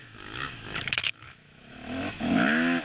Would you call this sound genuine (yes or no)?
no